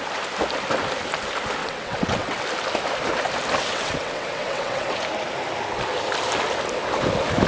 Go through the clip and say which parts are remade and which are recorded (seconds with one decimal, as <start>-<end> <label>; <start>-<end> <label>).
0.0-1.6 recorded; 1.6-2.4 remade; 2.4-3.7 recorded; 3.7-5.0 remade; 5.0-7.5 recorded